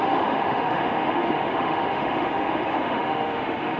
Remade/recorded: remade